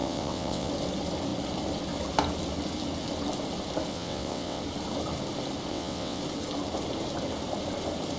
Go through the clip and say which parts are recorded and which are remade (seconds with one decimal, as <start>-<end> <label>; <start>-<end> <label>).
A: 0.0-0.7 remade; 0.7-3.9 recorded; 3.9-4.6 remade; 4.6-5.7 recorded; 5.7-6.2 remade; 6.2-8.2 recorded